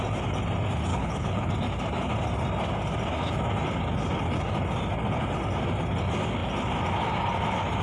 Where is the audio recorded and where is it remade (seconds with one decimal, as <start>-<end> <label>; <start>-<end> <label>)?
0.0-0.9 recorded; 0.9-1.5 remade; 1.5-7.8 recorded